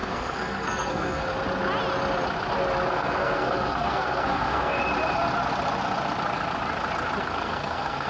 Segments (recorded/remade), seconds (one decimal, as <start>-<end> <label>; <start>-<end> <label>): 0.0-1.3 remade; 1.3-2.9 recorded; 2.9-4.8 remade; 4.8-7.2 recorded; 7.2-8.1 remade